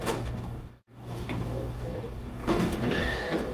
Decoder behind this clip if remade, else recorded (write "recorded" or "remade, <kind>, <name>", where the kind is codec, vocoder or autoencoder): remade, codec, DAC